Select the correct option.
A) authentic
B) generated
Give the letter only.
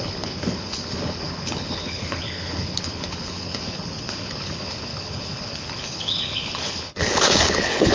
B